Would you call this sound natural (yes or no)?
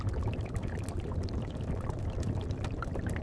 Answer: yes